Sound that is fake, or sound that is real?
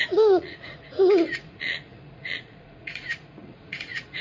fake